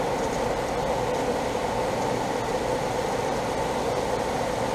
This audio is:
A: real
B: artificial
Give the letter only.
A